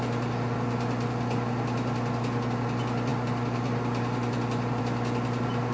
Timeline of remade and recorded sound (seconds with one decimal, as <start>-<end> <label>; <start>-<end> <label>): 0.0-5.7 recorded